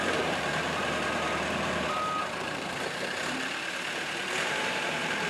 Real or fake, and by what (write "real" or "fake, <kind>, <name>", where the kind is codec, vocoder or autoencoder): fake, vocoder, BigVGAN v2